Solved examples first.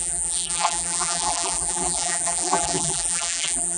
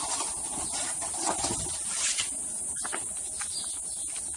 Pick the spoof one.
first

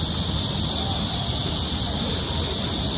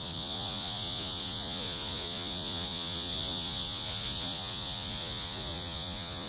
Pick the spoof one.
second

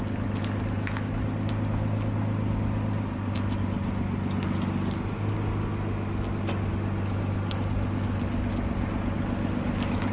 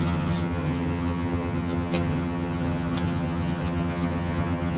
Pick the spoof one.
second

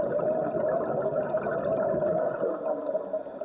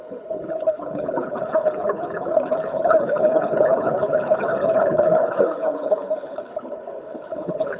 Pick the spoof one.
second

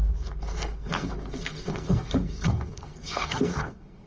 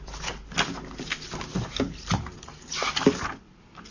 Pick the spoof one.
first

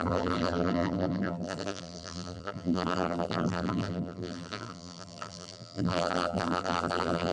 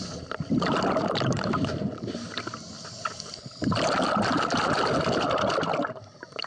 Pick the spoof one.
first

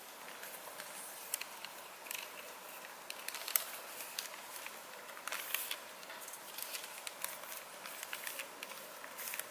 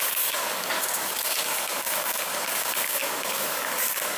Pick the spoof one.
second